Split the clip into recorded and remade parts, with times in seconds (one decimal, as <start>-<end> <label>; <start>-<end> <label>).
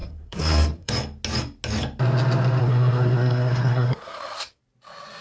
0.0-0.9 remade; 0.9-2.6 recorded; 2.6-4.6 remade; 4.6-5.2 recorded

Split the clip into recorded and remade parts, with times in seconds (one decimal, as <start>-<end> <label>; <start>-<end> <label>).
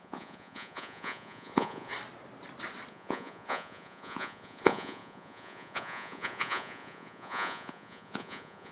0.0-1.9 remade; 1.9-2.9 recorded; 2.9-8.7 remade